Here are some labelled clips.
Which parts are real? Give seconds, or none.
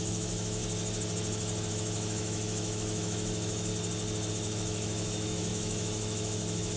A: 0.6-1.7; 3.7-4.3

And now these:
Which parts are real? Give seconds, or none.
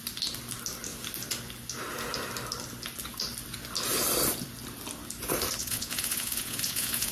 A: 0.0-5.6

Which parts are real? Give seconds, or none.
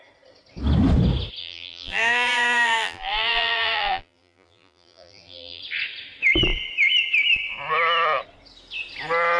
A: 0.0-1.4; 5.6-9.4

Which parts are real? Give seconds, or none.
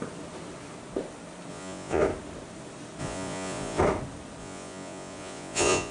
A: 0.0-1.5; 2.0-3.0; 3.8-4.4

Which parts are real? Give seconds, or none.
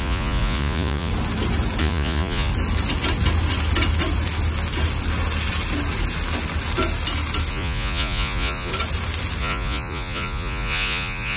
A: 1.1-1.8; 2.5-7.5; 8.7-9.4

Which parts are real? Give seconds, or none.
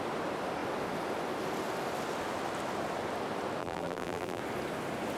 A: 0.0-3.6; 4.4-5.2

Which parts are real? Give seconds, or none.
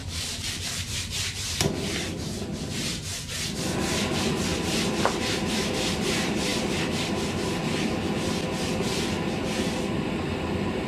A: 1.6-4.5; 5.2-10.9